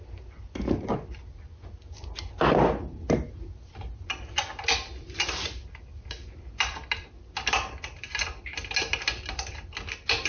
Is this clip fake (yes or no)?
no